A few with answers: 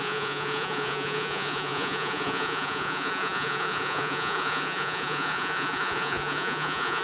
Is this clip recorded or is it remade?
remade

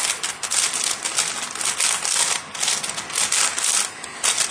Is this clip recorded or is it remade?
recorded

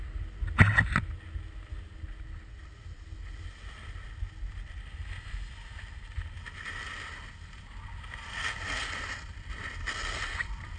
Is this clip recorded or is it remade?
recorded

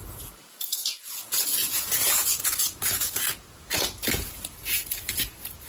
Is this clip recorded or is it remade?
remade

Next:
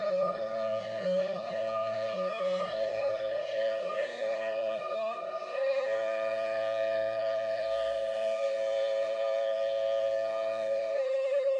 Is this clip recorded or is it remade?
remade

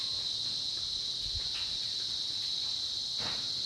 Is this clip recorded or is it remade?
recorded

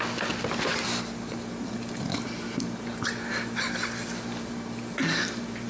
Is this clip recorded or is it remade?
recorded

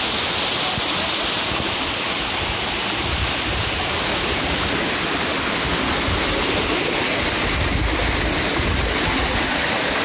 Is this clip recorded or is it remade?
recorded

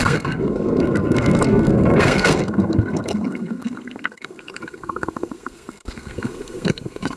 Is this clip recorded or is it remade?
remade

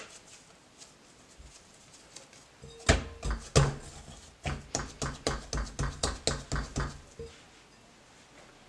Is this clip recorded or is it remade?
recorded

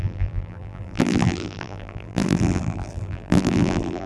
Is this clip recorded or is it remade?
remade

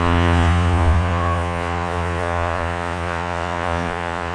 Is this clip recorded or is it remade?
remade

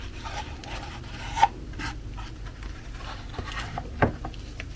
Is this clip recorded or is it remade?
recorded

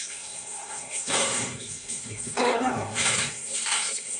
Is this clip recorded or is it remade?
remade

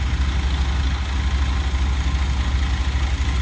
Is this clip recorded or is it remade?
recorded